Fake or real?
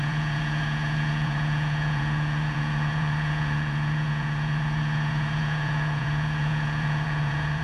fake